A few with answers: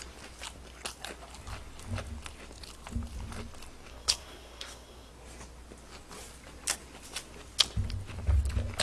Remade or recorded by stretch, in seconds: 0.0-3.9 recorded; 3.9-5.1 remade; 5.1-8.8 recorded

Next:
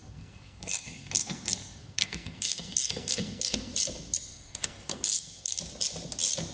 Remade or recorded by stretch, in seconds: 0.0-3.7 remade; 3.7-4.3 recorded; 4.3-5.6 remade; 5.6-6.5 recorded

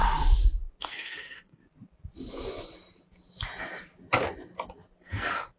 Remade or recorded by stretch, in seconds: 0.0-0.8 recorded; 0.8-1.6 remade; 1.6-5.0 recorded; 5.0-5.6 remade

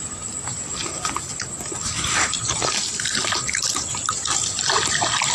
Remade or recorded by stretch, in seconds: 0.0-5.3 recorded

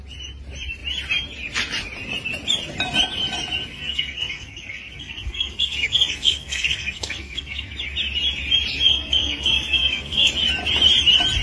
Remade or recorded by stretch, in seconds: 0.0-3.7 recorded; 3.7-7.7 remade; 7.7-8.9 recorded; 8.9-10.3 remade; 10.3-11.4 recorded

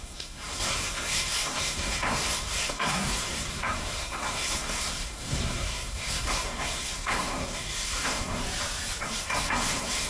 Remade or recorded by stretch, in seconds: 0.0-8.4 remade; 8.4-9.0 recorded; 9.0-10.1 remade

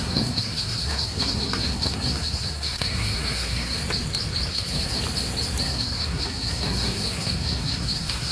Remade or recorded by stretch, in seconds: 0.0-3.8 remade; 3.8-4.5 recorded; 4.5-5.0 remade; 5.0-5.6 recorded; 5.6-8.3 remade